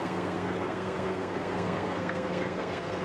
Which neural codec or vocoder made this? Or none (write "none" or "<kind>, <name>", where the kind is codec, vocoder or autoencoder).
codec, SNAC